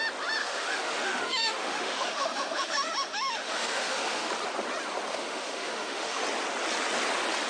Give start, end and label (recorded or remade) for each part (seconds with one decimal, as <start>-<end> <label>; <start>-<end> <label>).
0.0-0.4 recorded; 0.4-4.3 remade; 4.3-5.1 recorded; 5.1-6.2 remade; 6.2-7.5 recorded